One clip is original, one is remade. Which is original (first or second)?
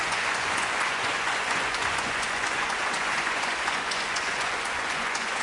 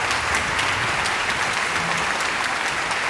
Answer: second